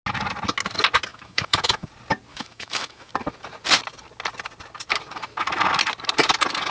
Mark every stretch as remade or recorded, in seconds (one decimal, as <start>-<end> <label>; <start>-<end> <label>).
0.0-1.1 recorded; 1.1-1.9 remade; 1.9-2.3 recorded; 2.3-3.1 remade; 3.1-6.7 recorded